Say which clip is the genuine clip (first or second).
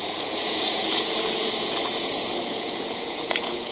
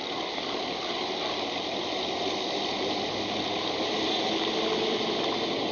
second